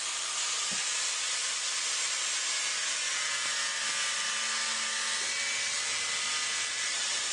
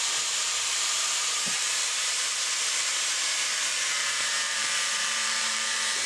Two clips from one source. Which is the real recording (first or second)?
first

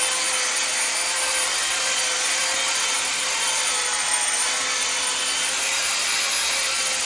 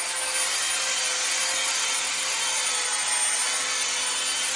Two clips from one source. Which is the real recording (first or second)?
second